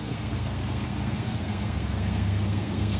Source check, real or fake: fake